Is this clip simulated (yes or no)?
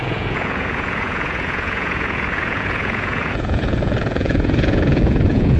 yes